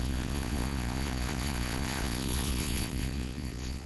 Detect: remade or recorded remade